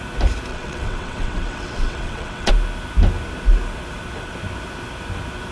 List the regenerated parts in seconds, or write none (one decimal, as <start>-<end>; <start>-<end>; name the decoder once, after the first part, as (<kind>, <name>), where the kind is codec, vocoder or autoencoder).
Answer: 0.5-2.5 (vocoder, WaveNeXt)